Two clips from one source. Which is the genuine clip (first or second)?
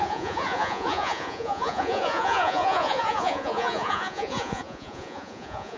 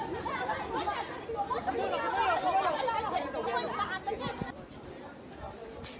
second